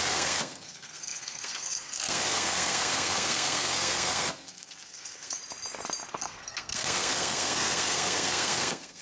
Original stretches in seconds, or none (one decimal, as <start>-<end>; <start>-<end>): 5.4-6.1

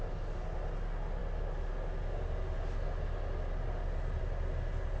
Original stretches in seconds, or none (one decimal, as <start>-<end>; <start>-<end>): 0.0-5.0

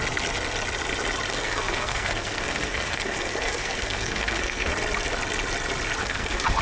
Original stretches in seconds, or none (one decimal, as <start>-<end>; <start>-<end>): 0.0-1.3; 4.7-6.0

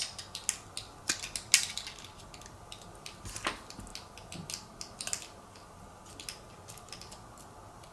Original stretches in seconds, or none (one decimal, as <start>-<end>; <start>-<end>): 0.0-7.9

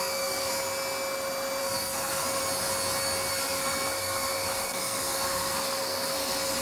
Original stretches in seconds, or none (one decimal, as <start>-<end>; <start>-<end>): 0.5-1.6; 2.4-3.3